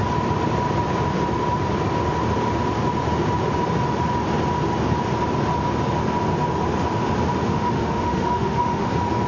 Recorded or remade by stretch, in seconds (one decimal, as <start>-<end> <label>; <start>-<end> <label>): 0.0-7.4 recorded; 7.4-8.9 remade; 8.9-9.3 recorded